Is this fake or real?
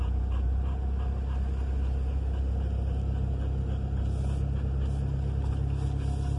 real